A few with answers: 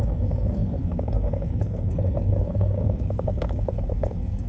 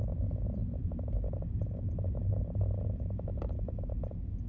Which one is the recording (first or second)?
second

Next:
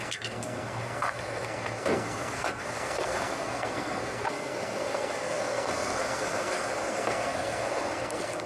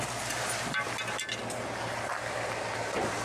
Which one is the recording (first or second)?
second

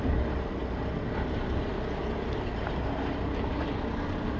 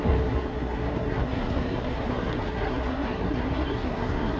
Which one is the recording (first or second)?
first